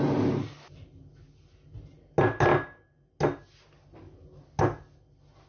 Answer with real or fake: real